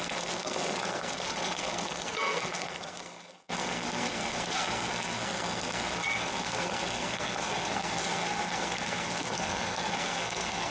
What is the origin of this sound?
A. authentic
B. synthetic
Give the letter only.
B